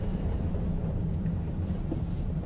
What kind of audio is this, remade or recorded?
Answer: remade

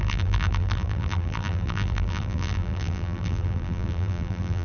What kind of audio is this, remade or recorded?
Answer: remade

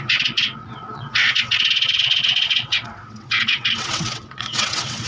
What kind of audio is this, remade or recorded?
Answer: remade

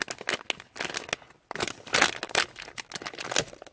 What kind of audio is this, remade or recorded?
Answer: recorded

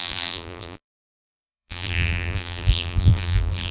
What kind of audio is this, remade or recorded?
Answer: remade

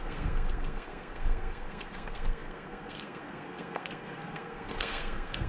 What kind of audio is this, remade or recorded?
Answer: remade